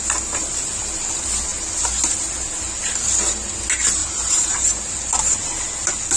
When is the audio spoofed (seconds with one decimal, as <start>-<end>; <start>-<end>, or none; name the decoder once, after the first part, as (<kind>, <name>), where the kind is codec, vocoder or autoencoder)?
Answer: 4.0-4.8 (vocoder, BigVGAN v2)